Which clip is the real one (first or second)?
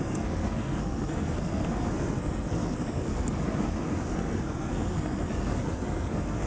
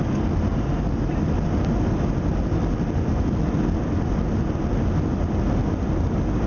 second